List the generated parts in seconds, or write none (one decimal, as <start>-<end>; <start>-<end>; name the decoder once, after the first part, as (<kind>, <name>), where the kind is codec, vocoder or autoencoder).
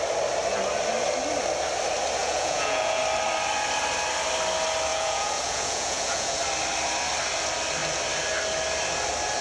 2.2-3.0 (vocoder, Vocos); 4.9-6.4